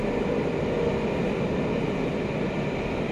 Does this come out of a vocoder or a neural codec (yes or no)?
no